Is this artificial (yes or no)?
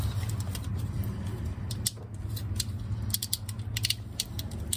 no